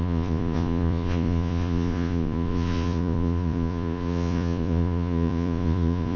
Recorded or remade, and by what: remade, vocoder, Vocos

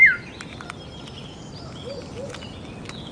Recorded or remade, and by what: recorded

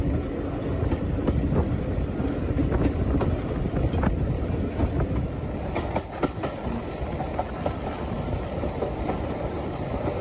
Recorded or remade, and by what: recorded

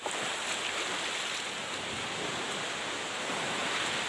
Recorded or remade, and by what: recorded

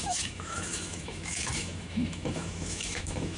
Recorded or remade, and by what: remade, autoencoder, DAC-VAE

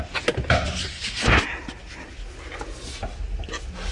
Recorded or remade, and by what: recorded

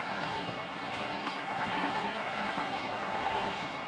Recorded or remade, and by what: remade, codec, SNAC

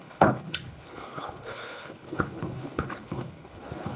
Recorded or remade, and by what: remade, codec, HILCodec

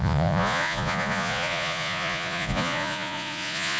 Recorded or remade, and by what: remade, vocoder, Vocos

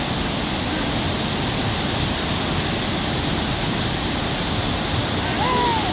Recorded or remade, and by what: recorded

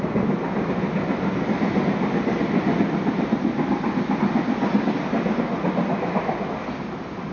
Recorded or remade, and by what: recorded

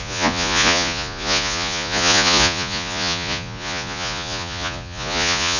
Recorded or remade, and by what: remade, vocoder, Vocos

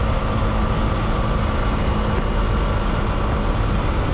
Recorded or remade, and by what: recorded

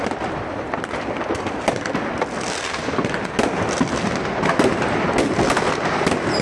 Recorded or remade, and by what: recorded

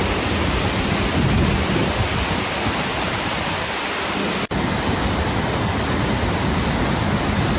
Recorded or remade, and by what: recorded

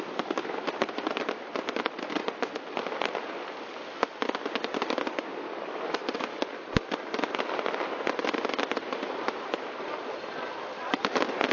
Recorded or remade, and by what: recorded